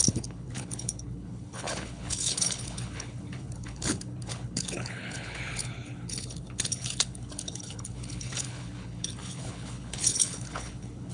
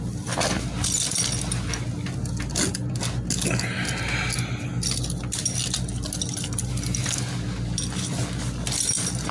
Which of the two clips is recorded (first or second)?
second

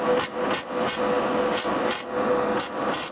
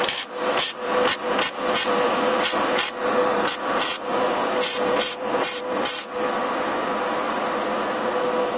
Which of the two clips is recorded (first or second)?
first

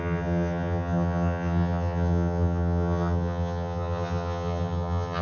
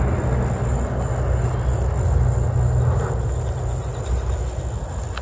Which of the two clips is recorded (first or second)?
second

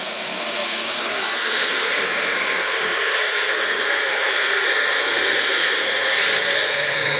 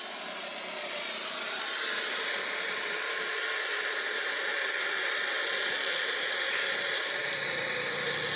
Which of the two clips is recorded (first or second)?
second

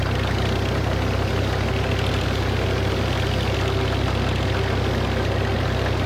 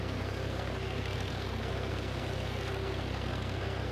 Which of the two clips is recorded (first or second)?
first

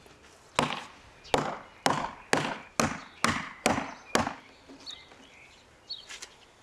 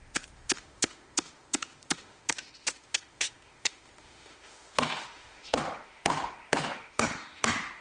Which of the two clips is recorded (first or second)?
first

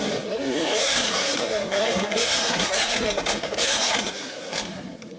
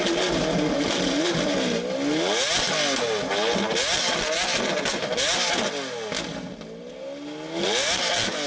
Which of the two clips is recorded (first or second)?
second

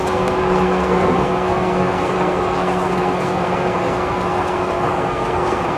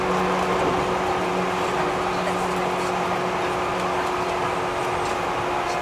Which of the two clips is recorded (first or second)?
second